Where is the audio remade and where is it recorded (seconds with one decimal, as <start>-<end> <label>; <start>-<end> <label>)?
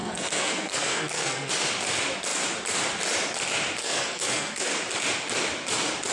0.0-1.5 remade; 1.5-3.8 recorded; 3.8-4.7 remade; 4.7-6.1 recorded